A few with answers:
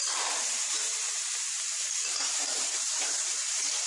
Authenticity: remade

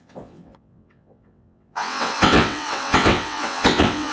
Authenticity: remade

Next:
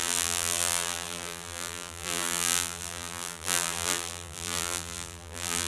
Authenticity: remade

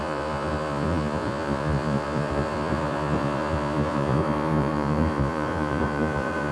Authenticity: remade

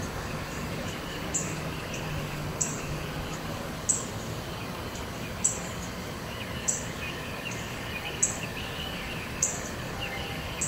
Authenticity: remade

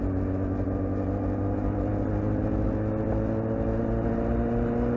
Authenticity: recorded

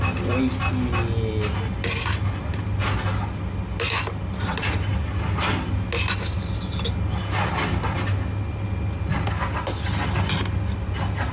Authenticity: recorded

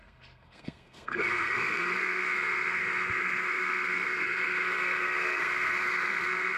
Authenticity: remade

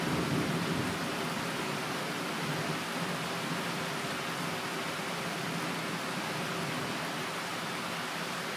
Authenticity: recorded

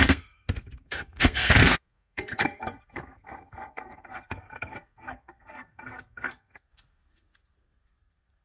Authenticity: remade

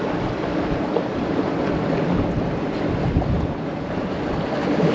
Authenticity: recorded